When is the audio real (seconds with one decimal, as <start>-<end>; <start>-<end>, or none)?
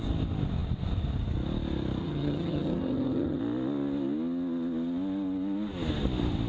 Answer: 0.0-2.0; 3.4-6.5